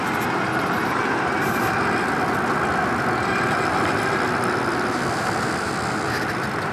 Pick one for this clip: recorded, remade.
recorded